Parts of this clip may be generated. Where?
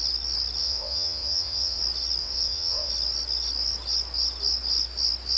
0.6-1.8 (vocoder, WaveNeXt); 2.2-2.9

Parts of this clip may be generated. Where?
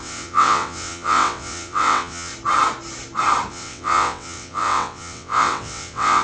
0.0-2.3 (vocoder, WaveNeXt); 3.5-6.2